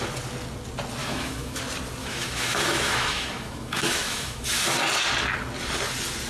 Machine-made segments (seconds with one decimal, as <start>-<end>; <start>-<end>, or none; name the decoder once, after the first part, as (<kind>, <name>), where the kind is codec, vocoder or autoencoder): 1.0-1.6 (autoencoder, DAC-VAE); 2.0-4.6